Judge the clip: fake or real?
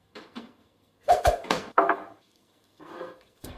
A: fake